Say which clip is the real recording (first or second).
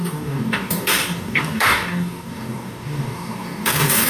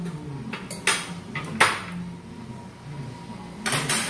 second